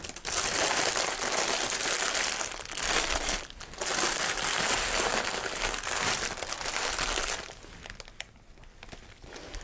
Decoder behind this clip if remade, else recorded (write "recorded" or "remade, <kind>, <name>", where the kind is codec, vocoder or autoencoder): recorded